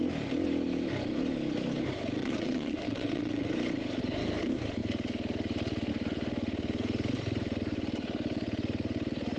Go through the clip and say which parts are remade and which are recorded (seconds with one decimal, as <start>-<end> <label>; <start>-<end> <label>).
0.0-2.2 recorded; 2.2-3.5 remade; 3.5-9.4 recorded